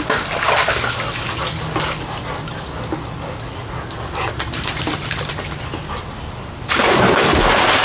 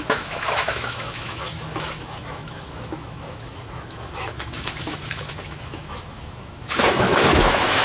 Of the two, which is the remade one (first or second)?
second